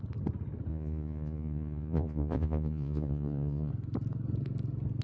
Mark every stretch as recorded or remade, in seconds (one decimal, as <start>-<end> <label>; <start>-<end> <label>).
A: 0.0-0.7 recorded; 0.7-3.7 remade; 3.7-5.0 recorded